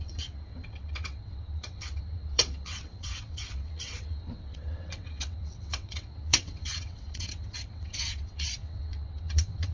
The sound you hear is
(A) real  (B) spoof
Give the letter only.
B